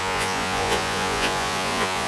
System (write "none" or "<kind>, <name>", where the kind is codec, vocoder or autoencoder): vocoder, Vocos